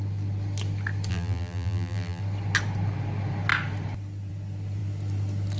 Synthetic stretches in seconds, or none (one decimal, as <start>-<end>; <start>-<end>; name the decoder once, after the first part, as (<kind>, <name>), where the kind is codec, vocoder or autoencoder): 1.1-2.2 (vocoder, BigVGAN v2)